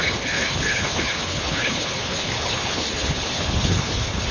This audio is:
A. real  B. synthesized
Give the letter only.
B